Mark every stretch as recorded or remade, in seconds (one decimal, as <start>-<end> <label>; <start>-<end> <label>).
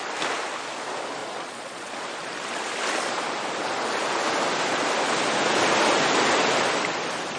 0.0-1.2 recorded; 1.2-1.9 remade; 1.9-7.4 recorded